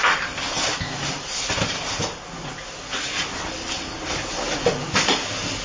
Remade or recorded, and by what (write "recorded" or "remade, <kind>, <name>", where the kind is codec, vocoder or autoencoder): recorded